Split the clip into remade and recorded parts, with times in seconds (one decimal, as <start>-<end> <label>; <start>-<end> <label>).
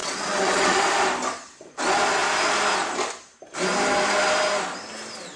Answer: 0.0-0.8 remade; 0.8-5.4 recorded